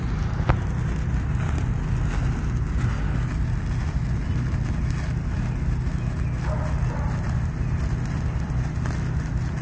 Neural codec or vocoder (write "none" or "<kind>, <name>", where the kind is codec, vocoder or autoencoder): none